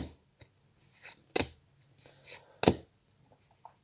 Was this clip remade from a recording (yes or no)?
no